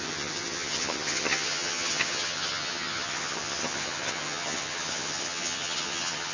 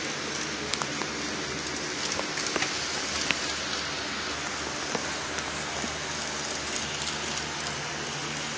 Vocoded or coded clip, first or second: first